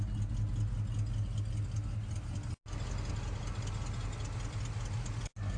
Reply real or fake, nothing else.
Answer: real